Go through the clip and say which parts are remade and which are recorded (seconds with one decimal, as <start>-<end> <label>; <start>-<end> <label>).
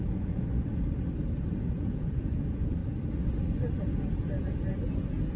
0.0-0.5 remade; 0.5-1.6 recorded; 1.6-2.8 remade; 2.8-3.8 recorded; 3.8-5.4 remade